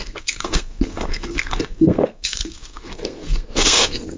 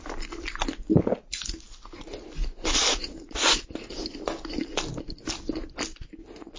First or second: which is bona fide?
second